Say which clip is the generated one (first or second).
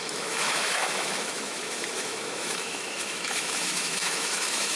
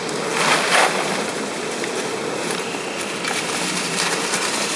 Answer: first